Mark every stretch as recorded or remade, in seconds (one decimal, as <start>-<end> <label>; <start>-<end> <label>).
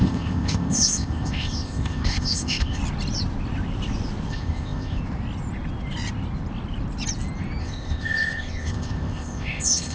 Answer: 0.0-2.8 remade; 2.8-4.3 recorded; 4.3-5.0 remade; 5.0-7.6 recorded; 7.6-9.9 remade